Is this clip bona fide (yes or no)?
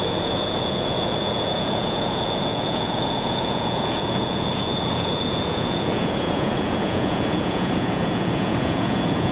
no